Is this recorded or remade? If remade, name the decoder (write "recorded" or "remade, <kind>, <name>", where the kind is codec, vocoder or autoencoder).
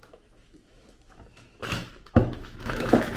remade, autoencoder, DAC-VAE